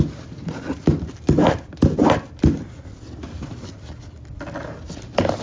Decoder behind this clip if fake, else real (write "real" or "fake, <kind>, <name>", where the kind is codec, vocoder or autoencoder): real